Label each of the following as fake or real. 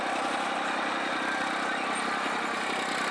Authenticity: real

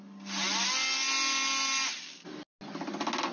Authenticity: real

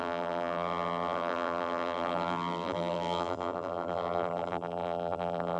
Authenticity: fake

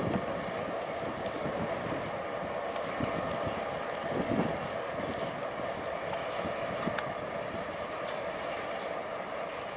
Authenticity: real